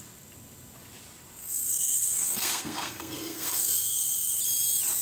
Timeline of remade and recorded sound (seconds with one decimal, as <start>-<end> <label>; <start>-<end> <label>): 0.0-1.4 recorded; 1.4-4.4 remade; 4.4-5.0 recorded